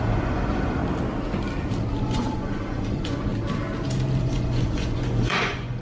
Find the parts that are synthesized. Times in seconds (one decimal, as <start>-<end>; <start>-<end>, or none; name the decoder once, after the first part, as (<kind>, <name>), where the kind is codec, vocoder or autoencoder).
0.0-0.8 (vocoder, Vocos); 2.0-3.3; 4.2-5.8